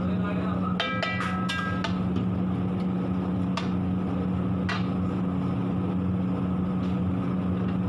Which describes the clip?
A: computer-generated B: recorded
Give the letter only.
B